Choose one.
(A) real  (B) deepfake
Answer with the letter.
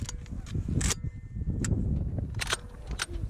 A